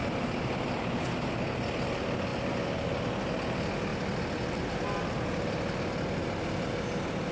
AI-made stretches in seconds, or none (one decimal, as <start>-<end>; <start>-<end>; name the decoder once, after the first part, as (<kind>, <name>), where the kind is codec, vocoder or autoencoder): none